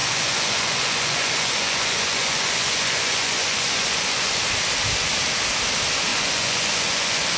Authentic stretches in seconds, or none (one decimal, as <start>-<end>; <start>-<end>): 4.4-6.1